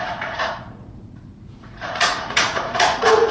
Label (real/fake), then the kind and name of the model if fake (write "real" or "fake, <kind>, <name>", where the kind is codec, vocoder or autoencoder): fake, vocoder, Vocos